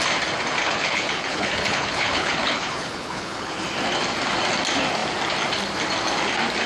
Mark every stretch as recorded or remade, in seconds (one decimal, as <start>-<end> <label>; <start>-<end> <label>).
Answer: 0.0-0.6 recorded; 0.6-3.6 remade; 3.6-6.7 recorded